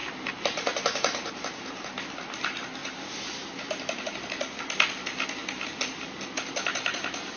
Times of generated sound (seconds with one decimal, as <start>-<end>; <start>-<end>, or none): 0.0-2.0; 2.8-4.1